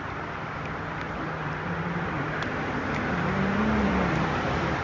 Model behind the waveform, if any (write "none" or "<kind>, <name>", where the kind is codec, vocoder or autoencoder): vocoder, BigVGAN v2